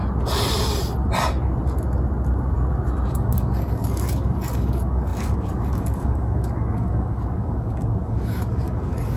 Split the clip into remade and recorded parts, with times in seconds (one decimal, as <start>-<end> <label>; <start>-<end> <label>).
0.0-3.1 recorded; 3.1-9.2 remade